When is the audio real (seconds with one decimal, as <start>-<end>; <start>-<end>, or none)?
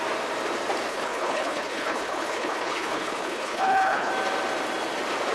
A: 0.0-0.9; 4.1-5.3